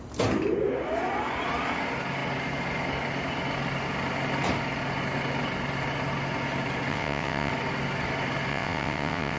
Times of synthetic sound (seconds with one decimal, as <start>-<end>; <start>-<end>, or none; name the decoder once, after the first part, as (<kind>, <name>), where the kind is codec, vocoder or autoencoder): 6.9-7.5 (vocoder, WaveNeXt); 8.5-9.4